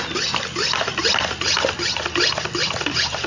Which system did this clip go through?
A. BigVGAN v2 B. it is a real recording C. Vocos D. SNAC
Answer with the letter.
B